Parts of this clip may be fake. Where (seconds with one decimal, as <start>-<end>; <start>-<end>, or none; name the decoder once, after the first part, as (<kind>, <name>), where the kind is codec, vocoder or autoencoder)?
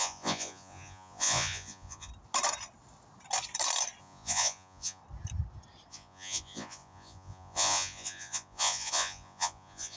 0.0-2.1 (vocoder, Vocos); 4.0-5.0; 5.9-10.0